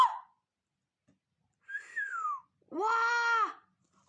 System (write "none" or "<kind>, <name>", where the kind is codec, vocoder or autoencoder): none